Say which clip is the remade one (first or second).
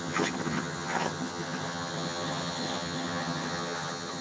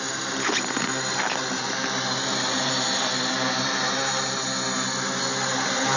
first